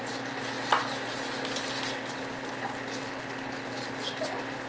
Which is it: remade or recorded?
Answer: recorded